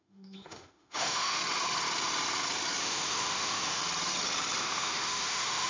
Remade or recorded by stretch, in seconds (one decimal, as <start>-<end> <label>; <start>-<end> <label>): 0.0-1.4 remade; 1.4-2.8 recorded; 2.8-3.8 remade; 3.8-4.6 recorded; 4.6-5.7 remade